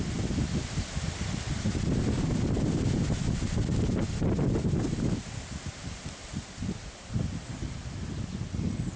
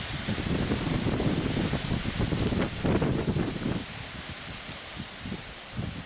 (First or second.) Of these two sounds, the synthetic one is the second